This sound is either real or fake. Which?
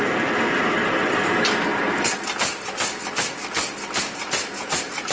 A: real